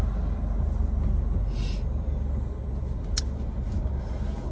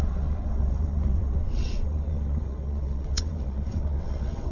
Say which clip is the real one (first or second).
first